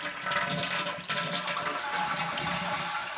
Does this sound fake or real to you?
real